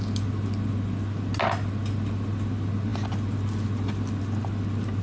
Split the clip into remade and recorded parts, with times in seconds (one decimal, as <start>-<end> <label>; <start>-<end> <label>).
0.0-5.0 recorded